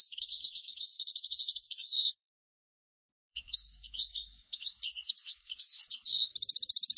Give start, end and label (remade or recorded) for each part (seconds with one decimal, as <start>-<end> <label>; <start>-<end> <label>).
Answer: 0.0-6.3 remade; 6.3-7.0 recorded